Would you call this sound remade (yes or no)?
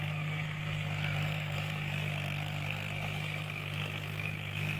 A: yes